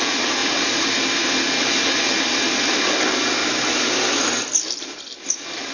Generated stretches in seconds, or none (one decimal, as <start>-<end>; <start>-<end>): none